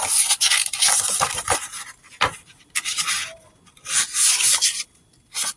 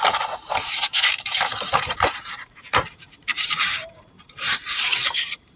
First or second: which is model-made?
second